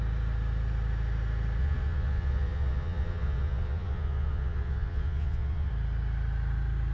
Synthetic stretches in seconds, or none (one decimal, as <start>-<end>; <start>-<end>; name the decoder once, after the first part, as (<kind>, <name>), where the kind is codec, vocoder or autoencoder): 1.6-5.7 (vocoder, Vocos)

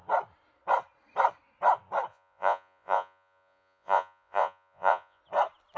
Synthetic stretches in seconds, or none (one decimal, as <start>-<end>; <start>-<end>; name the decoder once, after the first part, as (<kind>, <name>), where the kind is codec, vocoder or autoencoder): 2.1-5.2 (vocoder, Vocos)

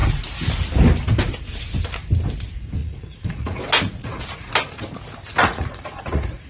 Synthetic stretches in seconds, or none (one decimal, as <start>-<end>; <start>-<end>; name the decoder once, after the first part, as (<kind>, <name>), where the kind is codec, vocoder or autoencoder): 2.8-3.6 (vocoder, Vocos); 4.0-4.5; 5.4-6.5